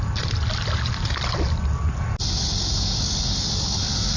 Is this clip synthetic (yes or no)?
no